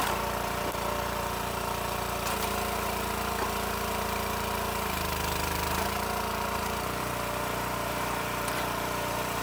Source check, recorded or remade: remade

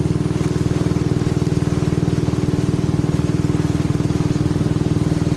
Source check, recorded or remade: recorded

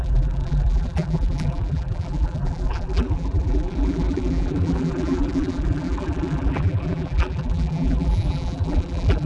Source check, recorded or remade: remade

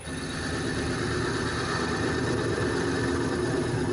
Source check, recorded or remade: recorded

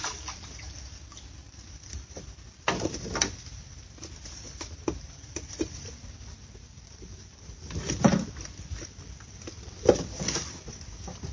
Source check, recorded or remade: remade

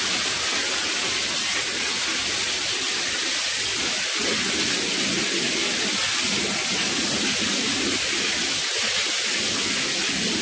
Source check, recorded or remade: recorded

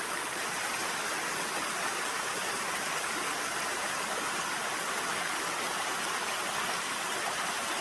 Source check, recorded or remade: recorded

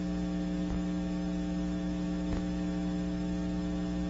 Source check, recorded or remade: recorded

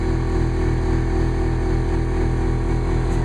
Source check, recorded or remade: recorded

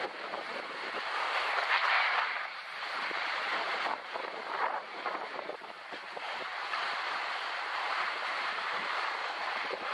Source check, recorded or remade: remade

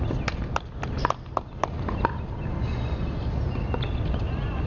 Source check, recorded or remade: recorded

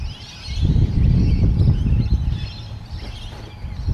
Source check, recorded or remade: recorded